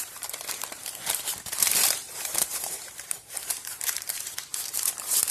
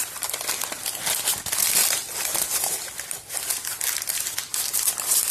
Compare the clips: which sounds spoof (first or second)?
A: first